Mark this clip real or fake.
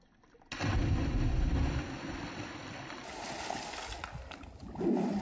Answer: real